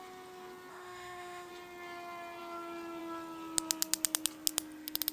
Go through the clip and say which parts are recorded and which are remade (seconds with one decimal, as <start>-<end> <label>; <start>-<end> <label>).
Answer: 0.0-0.7 recorded; 0.7-1.5 remade; 1.5-5.1 recorded